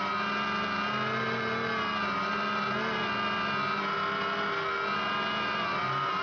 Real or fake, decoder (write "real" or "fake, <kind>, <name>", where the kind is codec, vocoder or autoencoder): real